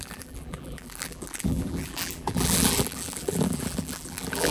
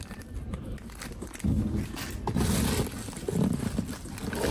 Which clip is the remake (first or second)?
first